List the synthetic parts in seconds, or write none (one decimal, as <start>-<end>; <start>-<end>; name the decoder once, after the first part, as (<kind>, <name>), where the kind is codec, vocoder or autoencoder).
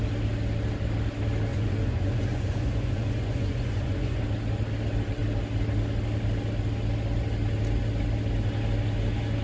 1.5-4.2 (vocoder, Vocos)